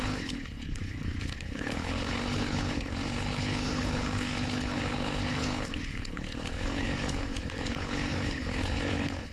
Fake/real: fake